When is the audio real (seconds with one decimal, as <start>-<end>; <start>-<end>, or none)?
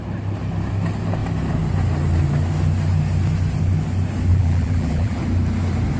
0.0-4.3; 5.2-6.0